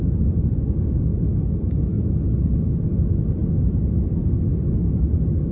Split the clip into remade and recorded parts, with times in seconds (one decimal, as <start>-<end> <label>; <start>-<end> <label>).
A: 0.0-5.5 recorded